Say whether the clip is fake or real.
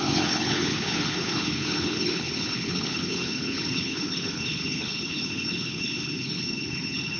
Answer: fake